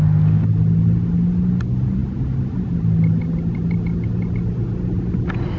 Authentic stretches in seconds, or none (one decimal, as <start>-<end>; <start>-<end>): 0.0-5.6